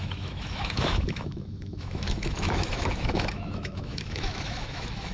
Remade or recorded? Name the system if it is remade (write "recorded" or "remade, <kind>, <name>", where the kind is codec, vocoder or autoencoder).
remade, autoencoder, DAC-VAE